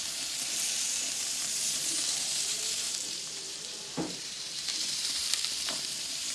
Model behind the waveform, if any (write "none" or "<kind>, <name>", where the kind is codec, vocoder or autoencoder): vocoder, BigVGAN v2